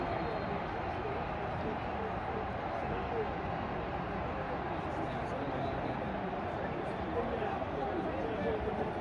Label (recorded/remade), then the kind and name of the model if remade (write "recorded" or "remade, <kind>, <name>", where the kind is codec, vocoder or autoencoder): recorded